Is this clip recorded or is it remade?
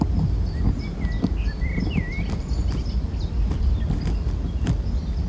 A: recorded